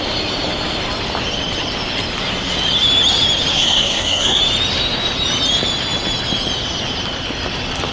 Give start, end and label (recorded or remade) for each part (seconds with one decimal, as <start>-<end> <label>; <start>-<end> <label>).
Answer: 0.0-3.5 recorded; 3.5-4.4 remade; 4.4-7.9 recorded

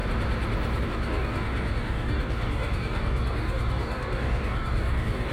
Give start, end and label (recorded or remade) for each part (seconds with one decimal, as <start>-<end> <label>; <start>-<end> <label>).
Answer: 0.0-0.8 recorded; 0.8-5.3 remade

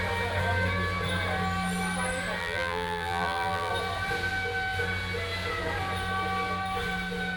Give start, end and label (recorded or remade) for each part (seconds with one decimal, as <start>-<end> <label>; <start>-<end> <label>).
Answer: 0.0-2.4 recorded; 2.4-3.7 remade; 3.7-7.4 recorded

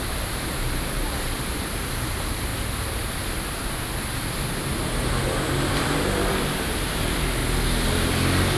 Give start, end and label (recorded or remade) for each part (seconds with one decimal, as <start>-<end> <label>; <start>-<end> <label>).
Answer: 0.0-2.5 remade; 2.5-5.7 recorded; 5.7-7.4 remade; 7.4-8.6 recorded

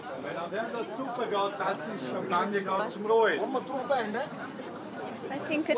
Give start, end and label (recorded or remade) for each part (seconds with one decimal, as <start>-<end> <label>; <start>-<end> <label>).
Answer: 0.0-2.7 remade; 2.7-3.3 recorded; 3.3-5.8 remade

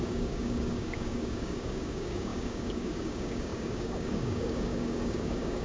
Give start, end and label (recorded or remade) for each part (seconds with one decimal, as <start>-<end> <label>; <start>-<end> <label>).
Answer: 0.0-5.6 remade

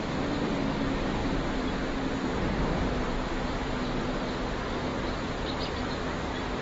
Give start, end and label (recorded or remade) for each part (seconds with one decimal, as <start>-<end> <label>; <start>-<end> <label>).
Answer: 0.0-1.2 recorded; 1.2-2.9 remade; 2.9-4.9 recorded; 4.9-5.8 remade; 5.8-6.6 recorded

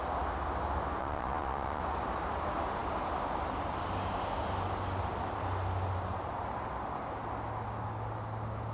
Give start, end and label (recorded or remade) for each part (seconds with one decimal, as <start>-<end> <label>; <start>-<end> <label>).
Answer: 0.0-1.0 recorded; 1.0-1.8 remade; 1.8-8.7 recorded